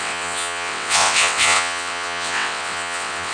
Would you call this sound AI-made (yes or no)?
yes